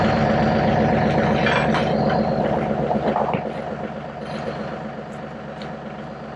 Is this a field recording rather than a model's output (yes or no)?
yes